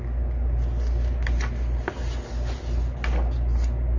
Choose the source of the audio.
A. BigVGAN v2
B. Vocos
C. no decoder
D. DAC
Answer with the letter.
C